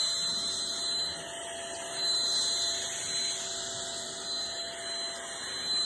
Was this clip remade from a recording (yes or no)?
no